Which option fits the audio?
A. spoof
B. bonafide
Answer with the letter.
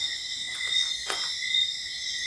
A